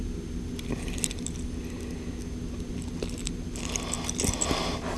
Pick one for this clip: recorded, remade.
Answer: recorded